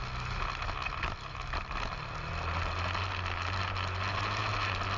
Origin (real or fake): real